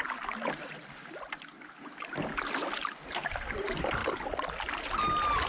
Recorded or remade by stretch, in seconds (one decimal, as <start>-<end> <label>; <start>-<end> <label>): 0.0-5.5 recorded